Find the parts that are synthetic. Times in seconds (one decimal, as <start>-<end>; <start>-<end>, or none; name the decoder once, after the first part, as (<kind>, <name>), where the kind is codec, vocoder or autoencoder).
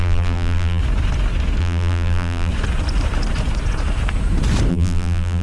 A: 0.0-0.8 (vocoder, BigVGAN v2); 1.6-2.5; 4.7-5.4